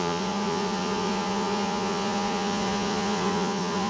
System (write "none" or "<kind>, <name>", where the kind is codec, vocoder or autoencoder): vocoder, Vocos